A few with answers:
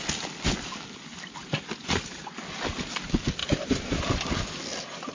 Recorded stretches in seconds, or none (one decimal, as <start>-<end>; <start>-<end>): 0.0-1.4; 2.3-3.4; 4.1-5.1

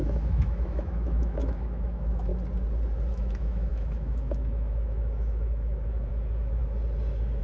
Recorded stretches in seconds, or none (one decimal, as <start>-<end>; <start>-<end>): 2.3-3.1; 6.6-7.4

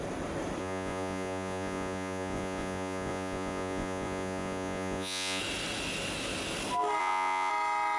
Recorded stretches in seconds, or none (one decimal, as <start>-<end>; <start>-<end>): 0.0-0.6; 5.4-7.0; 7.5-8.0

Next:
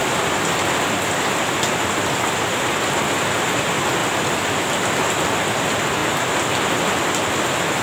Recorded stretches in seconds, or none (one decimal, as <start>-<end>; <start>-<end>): 3.6-7.8